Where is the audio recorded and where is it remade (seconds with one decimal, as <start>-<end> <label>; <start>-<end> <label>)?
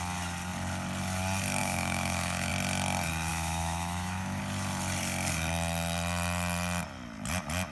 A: 0.0-1.6 recorded; 1.6-2.5 remade; 2.5-3.3 recorded; 3.3-4.4 remade; 4.4-7.7 recorded